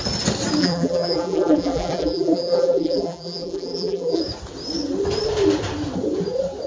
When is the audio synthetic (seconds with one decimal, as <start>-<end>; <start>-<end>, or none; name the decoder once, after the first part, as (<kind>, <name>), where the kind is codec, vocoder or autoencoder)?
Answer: 0.6-4.2 (vocoder, BigVGAN v2)